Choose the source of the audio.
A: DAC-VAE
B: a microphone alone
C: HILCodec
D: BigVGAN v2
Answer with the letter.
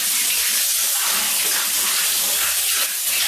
B